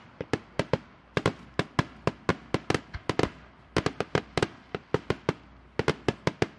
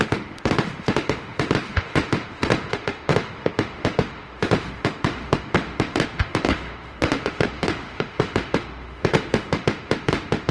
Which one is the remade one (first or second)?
second